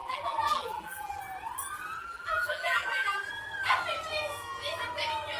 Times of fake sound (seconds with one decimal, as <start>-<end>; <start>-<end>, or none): 0.0-1.2; 2.0-3.3